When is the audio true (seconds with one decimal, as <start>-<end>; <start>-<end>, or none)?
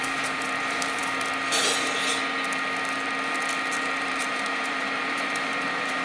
1.0-4.0